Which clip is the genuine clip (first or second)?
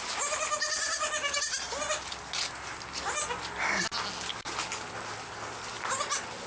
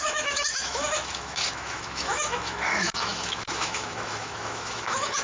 first